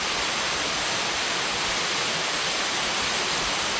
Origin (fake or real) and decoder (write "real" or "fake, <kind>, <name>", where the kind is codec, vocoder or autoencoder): real